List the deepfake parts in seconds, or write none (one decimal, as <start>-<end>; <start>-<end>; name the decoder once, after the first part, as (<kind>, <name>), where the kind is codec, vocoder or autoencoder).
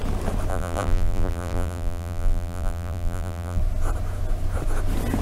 0.5-3.6 (vocoder, BigVGAN v2)